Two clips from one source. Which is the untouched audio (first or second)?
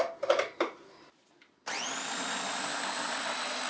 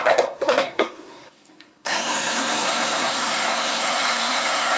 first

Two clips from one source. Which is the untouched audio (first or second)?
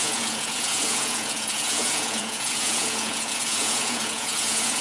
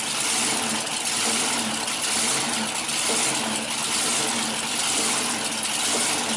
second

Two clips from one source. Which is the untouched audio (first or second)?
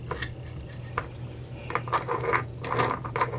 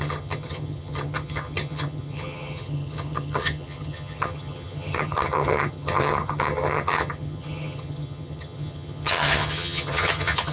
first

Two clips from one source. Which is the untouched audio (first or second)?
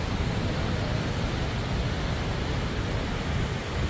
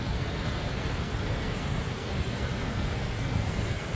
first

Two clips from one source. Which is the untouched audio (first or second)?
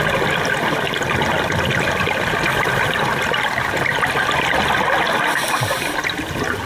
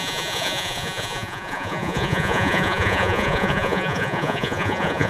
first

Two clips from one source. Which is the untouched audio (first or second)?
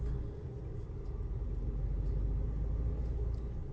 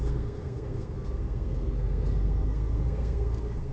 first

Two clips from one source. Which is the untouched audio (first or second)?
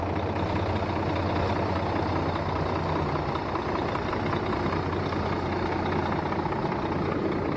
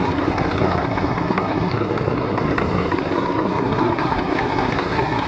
first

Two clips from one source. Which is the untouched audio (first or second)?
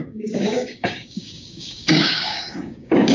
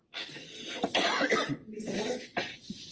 second